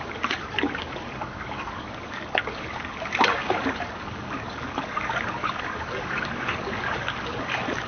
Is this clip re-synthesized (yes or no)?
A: yes